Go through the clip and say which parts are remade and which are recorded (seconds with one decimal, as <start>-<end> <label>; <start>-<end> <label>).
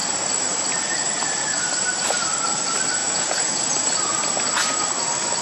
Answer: 0.0-3.0 recorded; 3.0-3.7 remade; 3.7-5.4 recorded